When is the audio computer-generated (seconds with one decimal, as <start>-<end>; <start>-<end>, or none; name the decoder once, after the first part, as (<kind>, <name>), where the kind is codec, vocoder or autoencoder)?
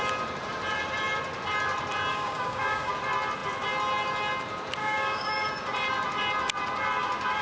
2.1-2.9 (codec, DAC); 4.8-5.3